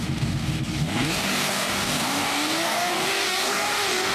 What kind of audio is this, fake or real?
fake